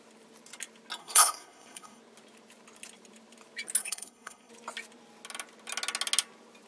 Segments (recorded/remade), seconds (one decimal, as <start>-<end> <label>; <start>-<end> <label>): 0.0-1.0 recorded; 1.0-2.0 remade; 2.0-3.8 recorded; 3.8-4.5 remade; 4.5-6.7 recorded